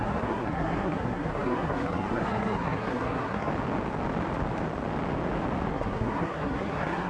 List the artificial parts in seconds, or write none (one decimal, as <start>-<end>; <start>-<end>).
0.0-3.5; 5.7-7.1